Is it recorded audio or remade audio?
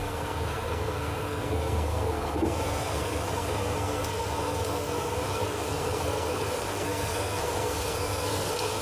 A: remade